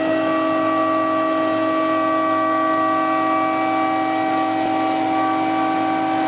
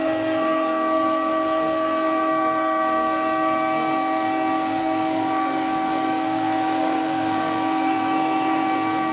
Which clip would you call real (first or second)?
first